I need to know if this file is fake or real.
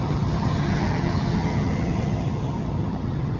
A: fake